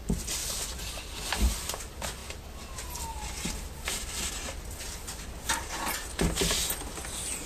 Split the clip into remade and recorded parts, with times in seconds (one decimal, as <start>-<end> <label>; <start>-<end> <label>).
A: 0.0-7.5 recorded